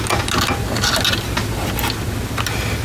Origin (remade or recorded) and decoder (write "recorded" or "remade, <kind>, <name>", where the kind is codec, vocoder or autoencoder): recorded